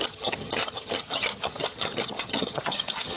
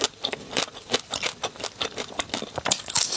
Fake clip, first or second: first